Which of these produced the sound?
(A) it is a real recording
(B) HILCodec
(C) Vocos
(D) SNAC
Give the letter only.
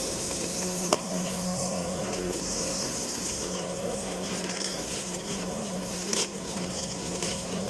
D